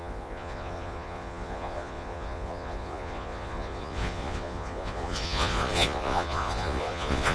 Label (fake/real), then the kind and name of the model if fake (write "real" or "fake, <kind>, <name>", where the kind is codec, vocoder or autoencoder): fake, vocoder, Vocos